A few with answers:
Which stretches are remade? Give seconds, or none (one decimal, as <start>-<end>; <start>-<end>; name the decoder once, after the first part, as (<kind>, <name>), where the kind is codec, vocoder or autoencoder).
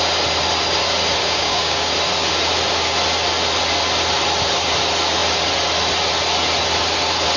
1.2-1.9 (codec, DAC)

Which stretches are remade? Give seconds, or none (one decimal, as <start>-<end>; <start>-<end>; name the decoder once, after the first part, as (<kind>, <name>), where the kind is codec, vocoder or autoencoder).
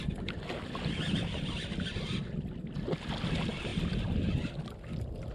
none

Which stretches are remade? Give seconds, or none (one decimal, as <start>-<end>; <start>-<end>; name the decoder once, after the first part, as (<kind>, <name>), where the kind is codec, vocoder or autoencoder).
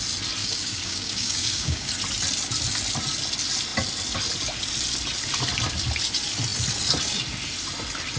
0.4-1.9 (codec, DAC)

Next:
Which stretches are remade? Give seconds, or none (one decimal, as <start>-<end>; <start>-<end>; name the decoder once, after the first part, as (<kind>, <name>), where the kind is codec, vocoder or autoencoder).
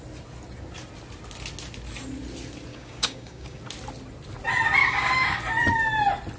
2.7-3.6 (codec, DAC); 4.8-5.4